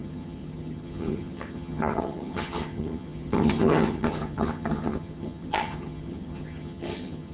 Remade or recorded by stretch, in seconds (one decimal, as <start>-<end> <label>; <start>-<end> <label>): 0.0-7.3 remade